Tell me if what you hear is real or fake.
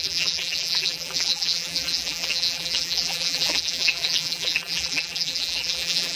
fake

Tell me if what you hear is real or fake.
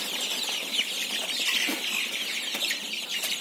real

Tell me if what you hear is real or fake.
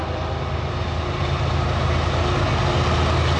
real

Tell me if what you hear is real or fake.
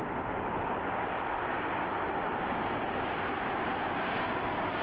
fake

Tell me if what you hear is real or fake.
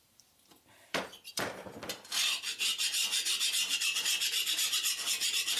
fake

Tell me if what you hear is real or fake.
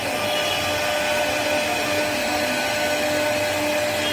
real